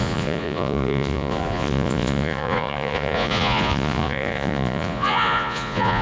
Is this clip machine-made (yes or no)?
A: yes